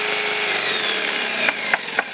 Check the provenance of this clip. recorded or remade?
recorded